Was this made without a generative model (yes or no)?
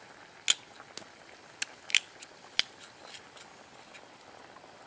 yes